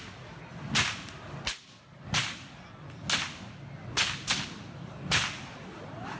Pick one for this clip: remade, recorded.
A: recorded